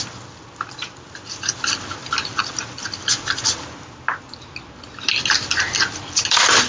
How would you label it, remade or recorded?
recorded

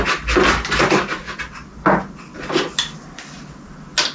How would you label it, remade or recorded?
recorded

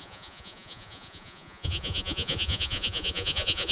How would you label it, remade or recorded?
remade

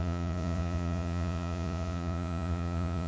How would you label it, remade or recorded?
remade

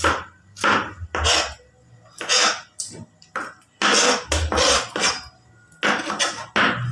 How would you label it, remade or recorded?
recorded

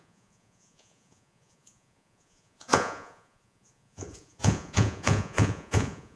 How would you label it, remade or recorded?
remade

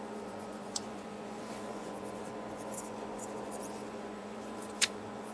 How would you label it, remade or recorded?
remade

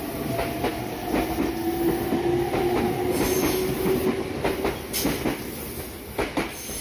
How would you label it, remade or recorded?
recorded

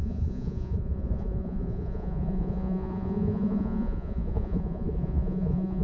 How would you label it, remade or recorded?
remade